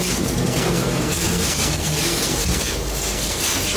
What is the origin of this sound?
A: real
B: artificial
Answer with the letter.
B